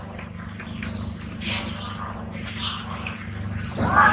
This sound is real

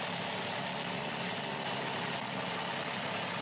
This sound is real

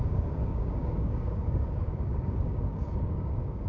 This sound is fake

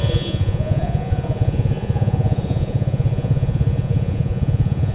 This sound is fake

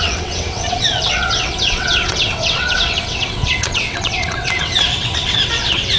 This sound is fake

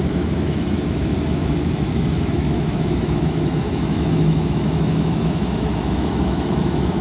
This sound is fake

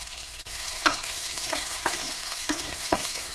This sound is fake